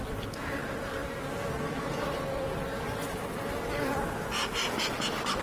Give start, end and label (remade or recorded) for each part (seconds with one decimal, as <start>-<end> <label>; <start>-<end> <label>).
0.0-5.4 recorded